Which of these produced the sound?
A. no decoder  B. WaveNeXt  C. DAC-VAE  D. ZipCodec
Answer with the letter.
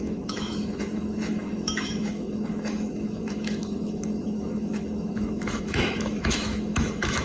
C